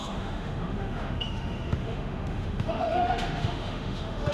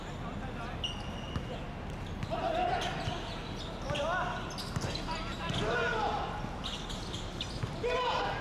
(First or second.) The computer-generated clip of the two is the first